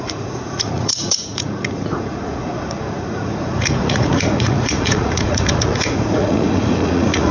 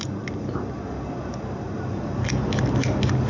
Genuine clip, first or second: second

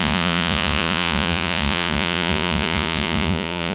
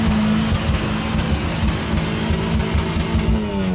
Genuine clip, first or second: second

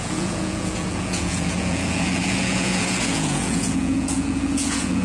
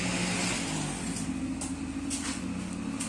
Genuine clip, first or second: second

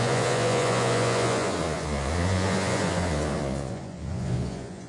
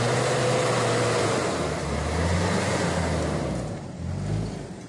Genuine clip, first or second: second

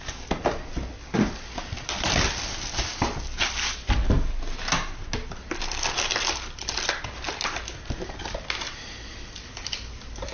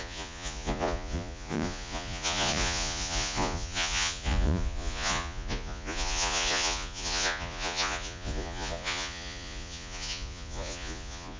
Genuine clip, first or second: first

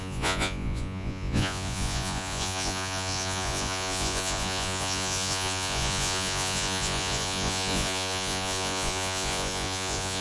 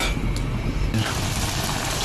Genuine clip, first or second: second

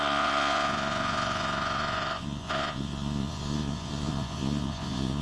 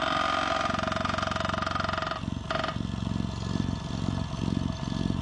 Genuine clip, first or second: second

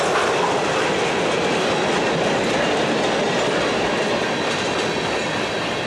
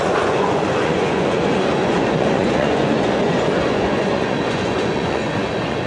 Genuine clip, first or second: first